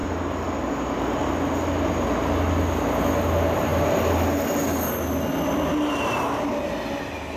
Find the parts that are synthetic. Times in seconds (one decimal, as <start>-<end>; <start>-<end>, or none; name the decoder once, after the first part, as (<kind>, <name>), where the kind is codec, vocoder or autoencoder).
none